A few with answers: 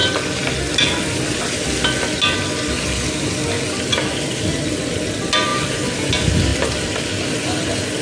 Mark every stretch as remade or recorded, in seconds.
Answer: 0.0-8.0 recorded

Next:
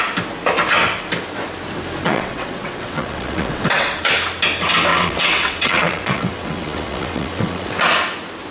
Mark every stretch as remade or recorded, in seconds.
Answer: 0.0-2.0 recorded; 2.0-4.1 remade; 4.1-4.9 recorded; 4.9-7.8 remade; 7.8-8.5 recorded

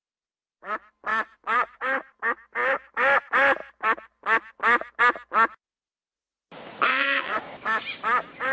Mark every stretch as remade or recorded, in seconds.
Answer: 0.0-1.1 recorded; 1.1-1.8 remade; 1.8-6.9 recorded; 6.9-7.4 remade; 7.4-8.5 recorded

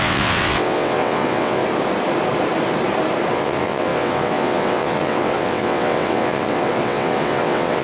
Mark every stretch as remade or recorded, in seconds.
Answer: 0.0-1.6 remade; 1.6-3.3 recorded; 3.3-7.8 remade

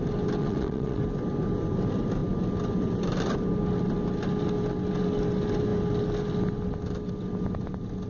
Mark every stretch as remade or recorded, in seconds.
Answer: 0.0-0.4 recorded; 0.4-1.0 remade; 1.0-8.1 recorded

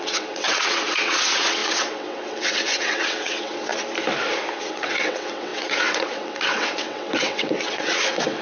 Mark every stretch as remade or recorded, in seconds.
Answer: 0.0-3.7 remade; 3.7-4.6 recorded; 4.6-8.4 remade

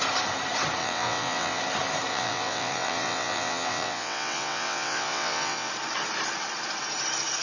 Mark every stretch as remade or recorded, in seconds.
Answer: 0.0-0.8 recorded; 0.8-1.6 remade; 1.6-2.1 recorded; 2.1-5.7 remade; 5.7-7.4 recorded

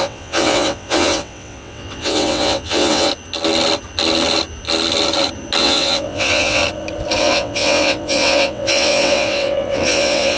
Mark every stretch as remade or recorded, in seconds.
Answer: 0.0-3.1 remade; 3.1-5.6 recorded; 5.6-6.6 remade; 6.6-7.2 recorded; 7.2-10.4 remade